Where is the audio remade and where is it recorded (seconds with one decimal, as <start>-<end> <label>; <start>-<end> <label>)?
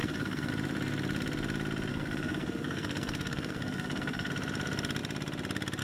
0.0-0.5 remade; 0.5-1.9 recorded; 1.9-4.3 remade; 4.3-5.8 recorded